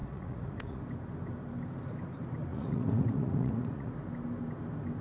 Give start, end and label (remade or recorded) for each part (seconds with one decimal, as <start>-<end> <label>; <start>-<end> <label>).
0.0-0.8 remade; 0.8-2.5 recorded; 2.5-3.9 remade; 3.9-5.0 recorded